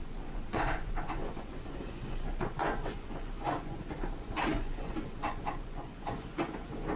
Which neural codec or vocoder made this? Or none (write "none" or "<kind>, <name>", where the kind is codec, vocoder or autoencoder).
vocoder, Vocos